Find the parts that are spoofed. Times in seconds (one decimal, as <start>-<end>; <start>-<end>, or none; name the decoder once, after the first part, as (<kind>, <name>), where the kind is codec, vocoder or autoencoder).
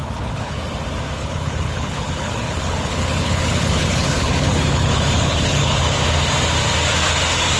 0.0-0.6 (codec, HILCodec); 1.2-5.8